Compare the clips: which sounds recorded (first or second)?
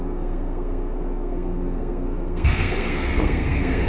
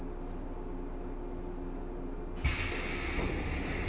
second